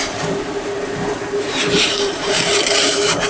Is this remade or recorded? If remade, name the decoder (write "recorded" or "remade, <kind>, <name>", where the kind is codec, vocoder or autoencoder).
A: remade, vocoder, BigVGAN v2